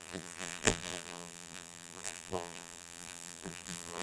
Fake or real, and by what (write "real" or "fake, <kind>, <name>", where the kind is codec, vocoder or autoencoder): fake, vocoder, BigVGAN v2